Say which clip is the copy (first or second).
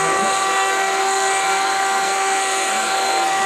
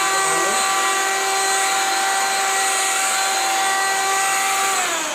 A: first